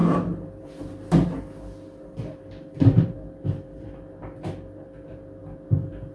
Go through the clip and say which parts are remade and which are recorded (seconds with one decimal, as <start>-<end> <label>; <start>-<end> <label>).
0.0-6.1 recorded